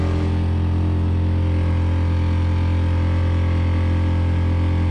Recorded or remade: recorded